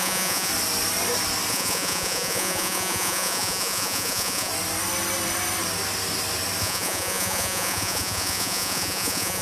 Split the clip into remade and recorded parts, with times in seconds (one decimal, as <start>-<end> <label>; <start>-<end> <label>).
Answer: 0.0-0.5 remade; 0.5-1.5 recorded; 1.5-4.5 remade; 4.5-6.6 recorded; 6.6-9.4 remade